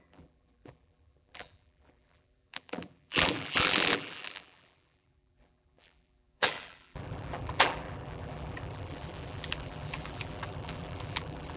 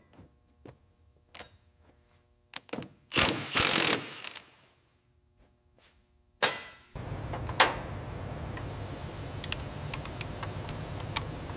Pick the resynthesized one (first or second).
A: first